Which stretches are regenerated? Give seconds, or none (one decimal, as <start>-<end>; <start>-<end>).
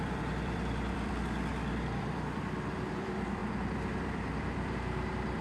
0.0-1.5; 2.0-5.4